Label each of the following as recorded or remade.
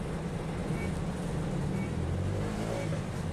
recorded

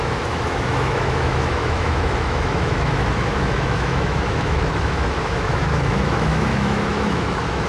remade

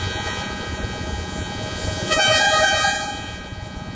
remade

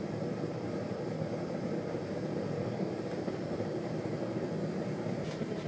remade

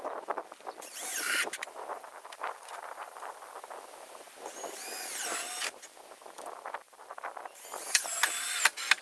recorded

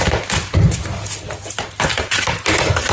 recorded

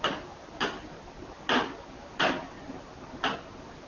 recorded